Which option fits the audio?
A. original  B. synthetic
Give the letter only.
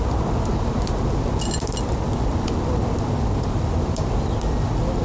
B